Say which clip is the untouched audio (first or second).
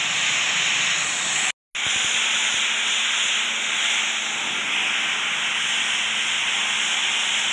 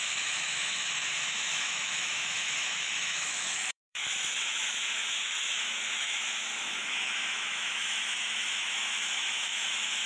first